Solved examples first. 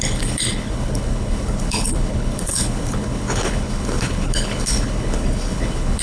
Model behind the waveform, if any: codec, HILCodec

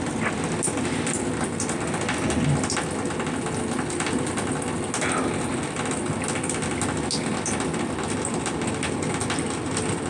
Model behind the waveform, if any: none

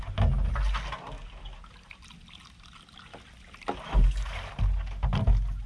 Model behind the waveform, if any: none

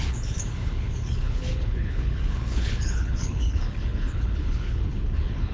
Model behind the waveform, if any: codec, HILCodec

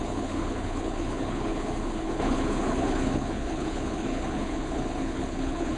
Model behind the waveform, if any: codec, HILCodec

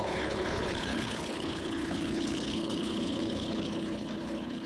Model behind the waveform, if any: codec, HILCodec